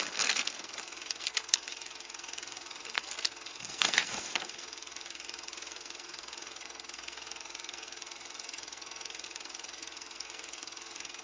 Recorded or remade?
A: remade